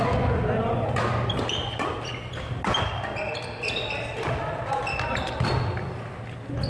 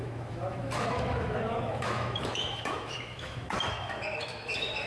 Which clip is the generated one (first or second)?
second